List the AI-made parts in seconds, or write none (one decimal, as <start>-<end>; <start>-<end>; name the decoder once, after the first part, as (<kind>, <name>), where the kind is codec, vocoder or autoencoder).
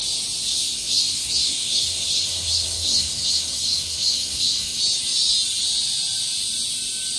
0.5-4.8 (codec, SNAC)